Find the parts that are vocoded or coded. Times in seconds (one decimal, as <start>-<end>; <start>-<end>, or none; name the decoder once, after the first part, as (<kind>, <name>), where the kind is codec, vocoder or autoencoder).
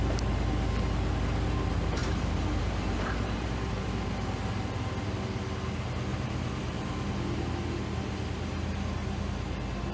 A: 2.0-4.6 (vocoder, BigVGAN v2); 6.1-7.1